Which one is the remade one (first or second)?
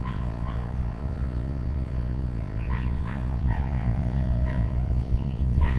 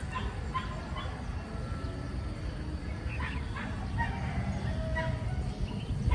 first